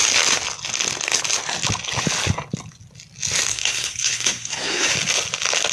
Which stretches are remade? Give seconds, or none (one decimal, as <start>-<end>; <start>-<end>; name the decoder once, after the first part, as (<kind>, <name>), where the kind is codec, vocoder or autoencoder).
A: 3.5-4.9 (codec, SNAC)